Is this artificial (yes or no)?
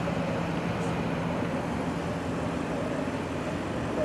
no